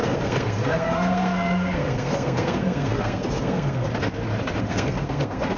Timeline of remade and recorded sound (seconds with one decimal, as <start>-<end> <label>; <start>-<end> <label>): 0.0-3.9 remade; 3.9-4.6 recorded; 4.6-5.6 remade